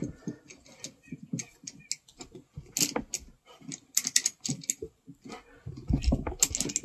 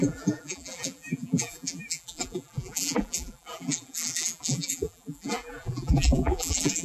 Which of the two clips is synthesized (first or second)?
second